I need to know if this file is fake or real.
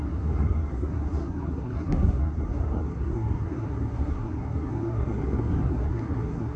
fake